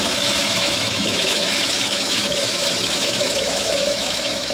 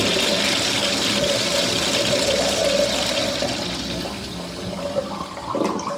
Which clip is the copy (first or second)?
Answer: first